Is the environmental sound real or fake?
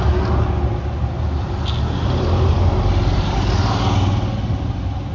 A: real